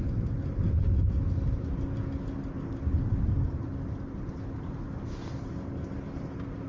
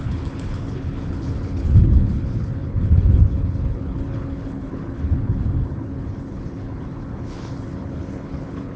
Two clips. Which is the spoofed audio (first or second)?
second